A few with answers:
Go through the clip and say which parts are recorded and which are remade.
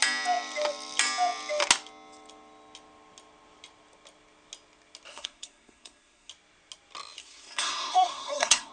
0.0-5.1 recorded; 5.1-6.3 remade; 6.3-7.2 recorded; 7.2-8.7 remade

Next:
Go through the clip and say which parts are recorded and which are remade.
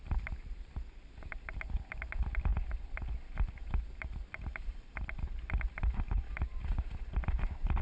0.0-7.8 recorded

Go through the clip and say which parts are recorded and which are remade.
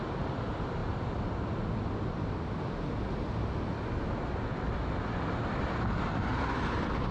0.0-7.1 recorded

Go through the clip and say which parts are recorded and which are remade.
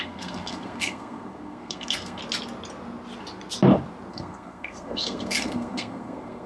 0.0-2.2 remade; 2.2-4.1 recorded; 4.1-6.5 remade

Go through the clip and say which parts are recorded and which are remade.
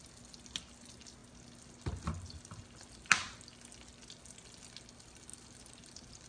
0.0-6.3 recorded